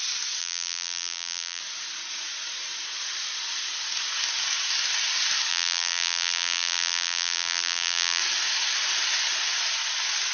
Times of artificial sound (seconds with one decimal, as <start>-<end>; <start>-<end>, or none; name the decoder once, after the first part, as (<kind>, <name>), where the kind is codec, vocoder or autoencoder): 0.4-1.6 (vocoder, BigVGAN v2); 5.5-8.2